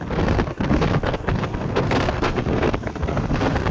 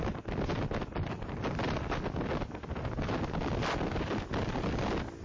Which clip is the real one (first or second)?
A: second